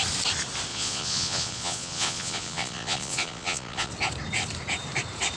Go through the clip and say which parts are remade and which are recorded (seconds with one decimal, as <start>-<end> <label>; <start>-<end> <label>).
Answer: 0.0-0.7 recorded; 0.7-3.9 remade; 3.9-5.4 recorded